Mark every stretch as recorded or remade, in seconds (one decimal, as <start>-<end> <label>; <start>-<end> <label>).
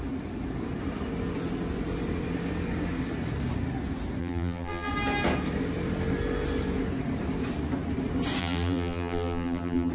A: 0.0-4.2 recorded; 4.2-4.9 remade; 4.9-8.4 recorded; 8.4-9.9 remade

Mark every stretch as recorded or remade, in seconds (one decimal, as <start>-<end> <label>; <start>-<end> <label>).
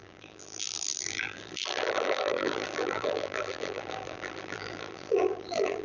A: 0.0-5.8 remade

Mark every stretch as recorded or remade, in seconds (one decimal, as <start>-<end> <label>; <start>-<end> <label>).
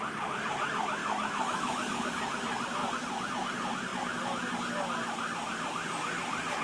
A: 0.0-1.0 recorded; 1.0-2.0 remade; 2.0-6.6 recorded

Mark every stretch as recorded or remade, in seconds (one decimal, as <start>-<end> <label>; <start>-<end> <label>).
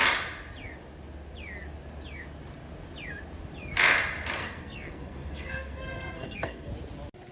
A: 0.0-4.4 recorded; 4.4-6.7 remade; 6.7-7.3 recorded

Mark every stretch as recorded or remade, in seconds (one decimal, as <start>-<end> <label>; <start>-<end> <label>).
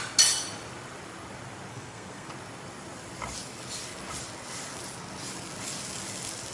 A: 0.0-1.7 recorded; 1.7-2.3 remade; 2.3-6.5 recorded